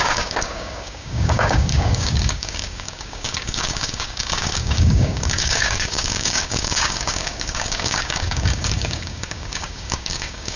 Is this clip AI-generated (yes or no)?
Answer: yes